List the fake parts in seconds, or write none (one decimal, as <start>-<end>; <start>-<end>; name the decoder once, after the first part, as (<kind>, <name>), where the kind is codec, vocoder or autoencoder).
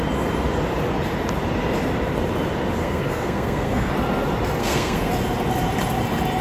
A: 2.8-3.9 (codec, SNAC); 4.6-5.1